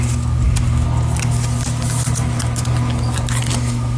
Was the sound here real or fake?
real